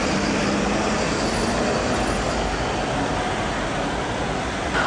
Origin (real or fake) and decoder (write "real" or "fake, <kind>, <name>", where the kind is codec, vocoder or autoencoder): real